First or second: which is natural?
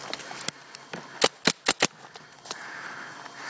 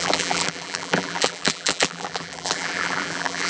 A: first